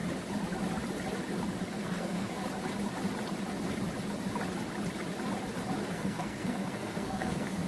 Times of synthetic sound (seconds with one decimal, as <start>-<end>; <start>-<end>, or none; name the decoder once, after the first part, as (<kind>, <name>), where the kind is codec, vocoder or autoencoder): 1.7-2.4 (codec, SNAC); 5.9-7.7